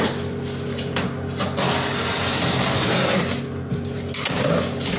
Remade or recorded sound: recorded